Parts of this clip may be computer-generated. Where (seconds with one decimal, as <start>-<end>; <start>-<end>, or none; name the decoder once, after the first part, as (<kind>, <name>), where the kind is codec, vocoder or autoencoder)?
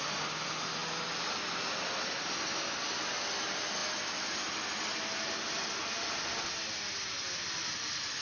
none